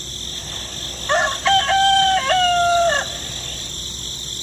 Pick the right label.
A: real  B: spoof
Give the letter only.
A